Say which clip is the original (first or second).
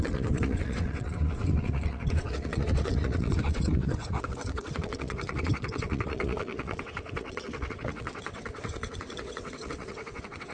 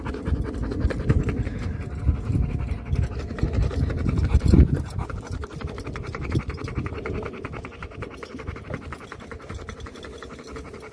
second